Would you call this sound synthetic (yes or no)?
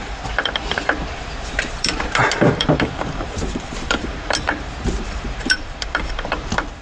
yes